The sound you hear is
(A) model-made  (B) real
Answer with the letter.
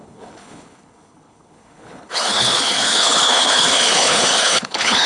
A